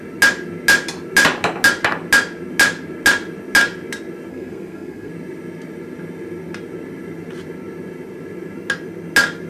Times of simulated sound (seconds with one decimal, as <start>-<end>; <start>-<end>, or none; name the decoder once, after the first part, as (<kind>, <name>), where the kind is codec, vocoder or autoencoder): 4.3-5.1 (codec, SNAC)

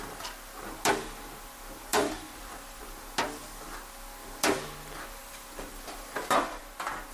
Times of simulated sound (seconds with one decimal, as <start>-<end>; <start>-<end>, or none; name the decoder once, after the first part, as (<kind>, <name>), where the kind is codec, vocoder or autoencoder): 1.9-2.8 (vocoder, BigVGAN v2); 5.2-6.6

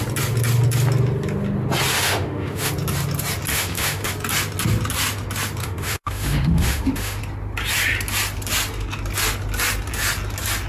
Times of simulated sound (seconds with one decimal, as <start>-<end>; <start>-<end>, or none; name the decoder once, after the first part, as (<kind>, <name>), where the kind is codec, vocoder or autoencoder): 1.9-2.7 (autoencoder, DAC-VAE); 3.5-4.1; 5.6-7.2

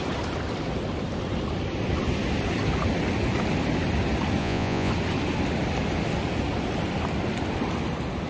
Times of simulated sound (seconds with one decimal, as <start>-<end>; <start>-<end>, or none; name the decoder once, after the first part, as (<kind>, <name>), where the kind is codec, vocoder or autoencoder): 4.4-4.9 (vocoder, Vocos)